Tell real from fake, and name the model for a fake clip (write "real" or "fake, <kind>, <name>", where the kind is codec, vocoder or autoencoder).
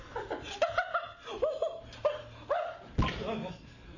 real